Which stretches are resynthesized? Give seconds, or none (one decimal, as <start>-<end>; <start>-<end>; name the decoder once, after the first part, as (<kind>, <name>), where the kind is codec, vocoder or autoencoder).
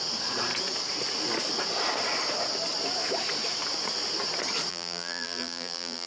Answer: 4.7-6.1 (vocoder, BigVGAN v2)